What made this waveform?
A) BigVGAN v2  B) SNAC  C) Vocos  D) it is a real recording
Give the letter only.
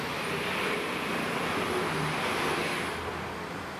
D